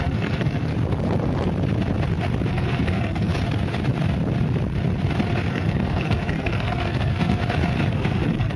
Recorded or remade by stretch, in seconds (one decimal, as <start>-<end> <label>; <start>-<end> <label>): 0.0-0.7 remade; 0.7-2.5 recorded; 2.5-3.3 remade; 3.3-5.5 recorded; 5.5-7.4 remade; 7.4-7.9 recorded; 7.9-8.6 remade